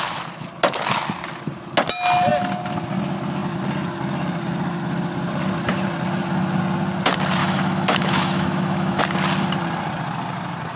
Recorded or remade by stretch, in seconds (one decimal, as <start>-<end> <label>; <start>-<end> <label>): 0.0-7.4 recorded; 7.4-9.0 remade; 9.0-10.8 recorded